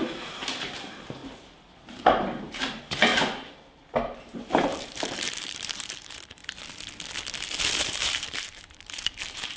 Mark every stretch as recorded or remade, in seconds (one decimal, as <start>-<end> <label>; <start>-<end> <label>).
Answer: 0.0-1.2 remade; 1.2-1.9 recorded; 1.9-3.1 remade; 3.1-4.2 recorded; 4.2-6.4 remade; 6.4-7.8 recorded; 7.8-9.6 remade